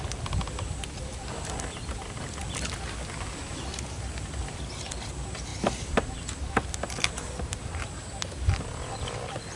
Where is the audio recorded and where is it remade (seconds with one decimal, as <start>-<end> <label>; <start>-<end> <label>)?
0.0-9.6 remade